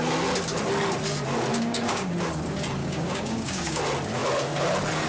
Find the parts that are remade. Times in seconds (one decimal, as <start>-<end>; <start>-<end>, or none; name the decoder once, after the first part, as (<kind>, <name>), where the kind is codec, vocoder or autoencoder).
1.5-2.1 (codec, DAC); 2.8-3.8